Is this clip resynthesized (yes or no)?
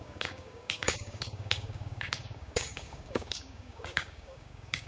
yes